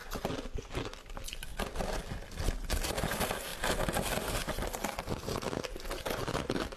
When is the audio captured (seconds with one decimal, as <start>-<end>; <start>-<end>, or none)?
0.6-6.8